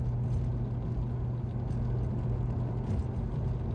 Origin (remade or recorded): recorded